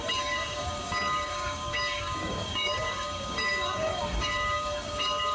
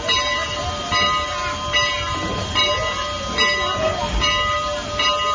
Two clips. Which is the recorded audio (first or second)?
second